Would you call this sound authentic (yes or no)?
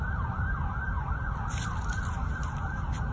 yes